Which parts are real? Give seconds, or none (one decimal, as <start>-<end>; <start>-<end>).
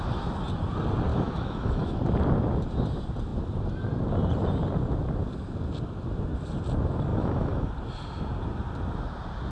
0.0-1.1; 2.0-7.1; 7.7-9.5